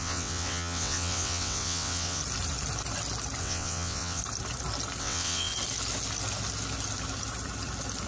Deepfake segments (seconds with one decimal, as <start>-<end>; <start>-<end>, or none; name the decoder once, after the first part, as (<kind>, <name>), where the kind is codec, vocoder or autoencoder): 0.0-2.2 (vocoder, WaveNeXt); 3.4-4.2; 5.0-5.5